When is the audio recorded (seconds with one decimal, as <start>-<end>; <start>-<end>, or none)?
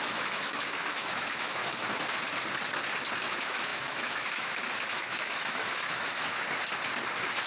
1.6-3.3; 6.3-7.5